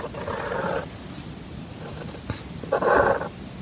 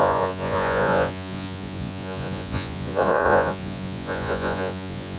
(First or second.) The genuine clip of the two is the first